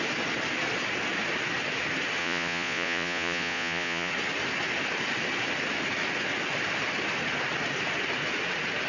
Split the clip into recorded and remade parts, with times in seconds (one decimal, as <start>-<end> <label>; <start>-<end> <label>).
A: 0.0-2.2 recorded; 2.2-4.1 remade; 4.1-8.9 recorded